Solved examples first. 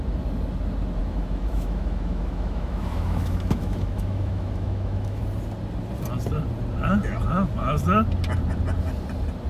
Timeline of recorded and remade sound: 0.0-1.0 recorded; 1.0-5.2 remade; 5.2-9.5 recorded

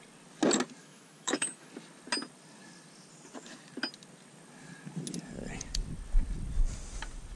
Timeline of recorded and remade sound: 0.0-0.8 recorded; 0.8-1.7 remade; 1.7-7.4 recorded

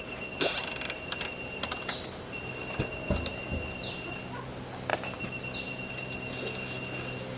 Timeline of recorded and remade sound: 0.0-7.4 recorded

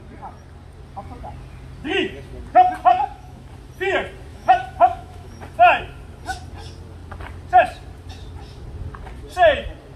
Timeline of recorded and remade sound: 0.0-2.9 recorded; 2.9-3.5 remade; 3.5-4.3 recorded; 4.3-5.3 remade; 5.3-10.0 recorded

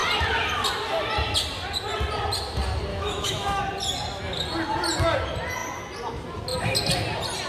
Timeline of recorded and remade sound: 0.0-2.9 recorded; 2.9-3.6 remade; 3.6-7.5 recorded

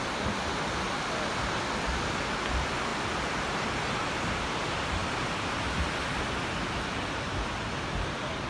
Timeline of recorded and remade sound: 0.0-8.5 recorded